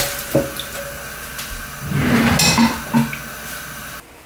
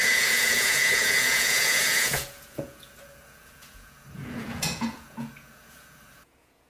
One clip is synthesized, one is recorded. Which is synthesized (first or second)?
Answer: second